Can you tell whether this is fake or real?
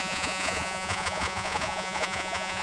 fake